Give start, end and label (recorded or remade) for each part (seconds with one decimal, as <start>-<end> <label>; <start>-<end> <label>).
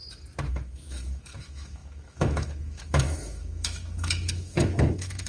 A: 0.0-0.5 recorded; 0.5-5.3 remade